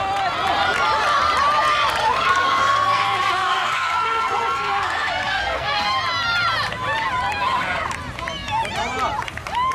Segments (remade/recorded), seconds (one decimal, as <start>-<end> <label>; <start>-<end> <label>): 0.0-2.0 recorded; 2.0-6.0 remade; 6.0-9.7 recorded